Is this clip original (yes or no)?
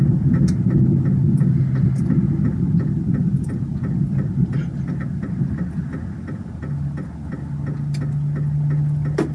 yes